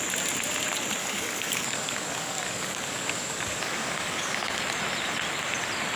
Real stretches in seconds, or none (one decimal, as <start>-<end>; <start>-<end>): 0.0-1.0; 4.6-6.0